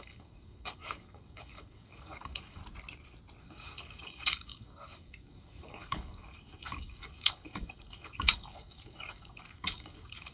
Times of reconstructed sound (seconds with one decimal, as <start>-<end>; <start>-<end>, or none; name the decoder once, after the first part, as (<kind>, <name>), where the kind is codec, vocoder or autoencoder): 0.0-2.6 (codec, DAC); 3.4-10.3